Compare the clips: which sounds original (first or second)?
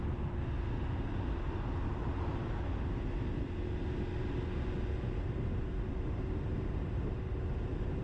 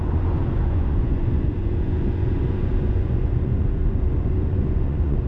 first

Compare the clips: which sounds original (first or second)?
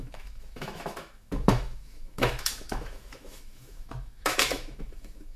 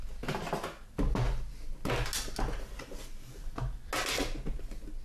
second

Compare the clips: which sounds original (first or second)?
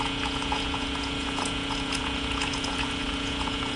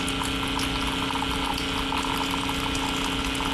second